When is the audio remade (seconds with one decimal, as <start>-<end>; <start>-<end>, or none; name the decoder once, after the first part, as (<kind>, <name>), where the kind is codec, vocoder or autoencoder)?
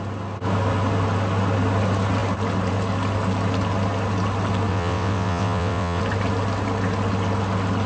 4.7-6.0 (vocoder, WaveNeXt)